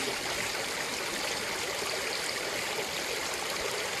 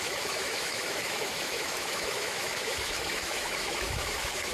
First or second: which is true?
first